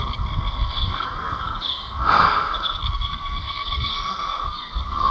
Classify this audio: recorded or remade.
remade